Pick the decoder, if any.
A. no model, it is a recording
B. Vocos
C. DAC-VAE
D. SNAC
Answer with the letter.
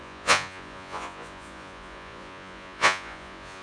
B